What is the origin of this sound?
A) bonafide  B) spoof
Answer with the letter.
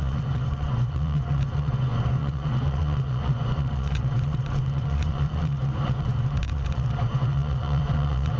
B